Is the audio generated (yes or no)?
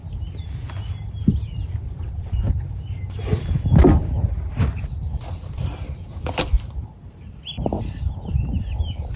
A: no